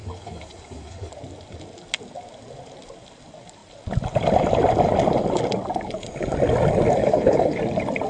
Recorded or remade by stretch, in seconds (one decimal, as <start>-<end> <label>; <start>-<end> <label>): 0.0-1.1 remade; 1.1-7.0 recorded; 7.0-7.6 remade; 7.6-8.1 recorded

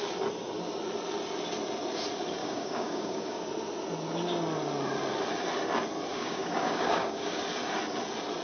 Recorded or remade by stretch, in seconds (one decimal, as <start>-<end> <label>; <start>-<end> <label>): 0.0-2.4 recorded; 2.4-3.4 remade; 3.4-6.1 recorded; 6.1-7.4 remade; 7.4-8.4 recorded

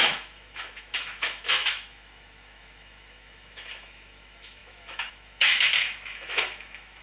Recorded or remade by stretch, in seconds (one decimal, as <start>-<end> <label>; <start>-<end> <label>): 0.0-7.0 remade

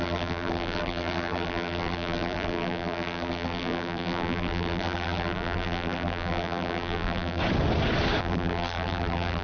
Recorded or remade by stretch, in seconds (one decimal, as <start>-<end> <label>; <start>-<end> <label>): 0.0-7.4 remade; 7.4-8.2 recorded; 8.2-9.4 remade

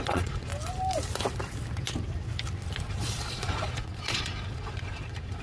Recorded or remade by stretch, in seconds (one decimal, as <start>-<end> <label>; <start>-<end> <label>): 0.0-0.5 remade; 0.5-2.9 recorded; 2.9-5.4 remade